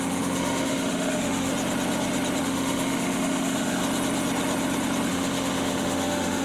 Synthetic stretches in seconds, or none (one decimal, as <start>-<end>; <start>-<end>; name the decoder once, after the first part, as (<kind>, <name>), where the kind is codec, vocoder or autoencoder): 0.0-1.5 (autoencoder, DAC-VAE); 2.4-3.8; 5.1-6.4